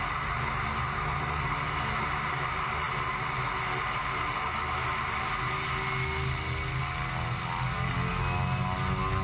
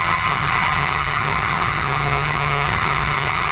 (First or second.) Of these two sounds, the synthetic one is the second